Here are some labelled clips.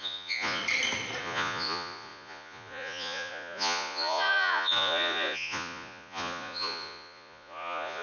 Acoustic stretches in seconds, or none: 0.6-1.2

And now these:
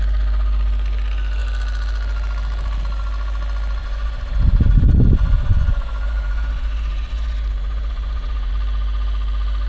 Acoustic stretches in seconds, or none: 0.0-3.8; 8.5-9.7

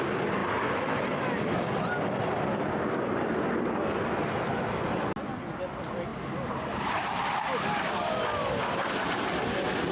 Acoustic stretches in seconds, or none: 0.0-9.9